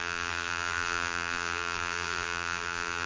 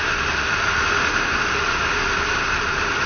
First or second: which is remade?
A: first